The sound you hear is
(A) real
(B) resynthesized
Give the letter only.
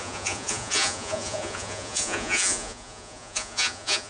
B